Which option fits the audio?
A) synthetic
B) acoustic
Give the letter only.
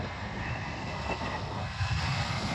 A